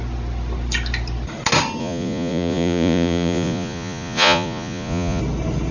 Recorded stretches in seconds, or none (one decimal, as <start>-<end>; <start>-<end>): 0.0-1.8; 5.2-5.7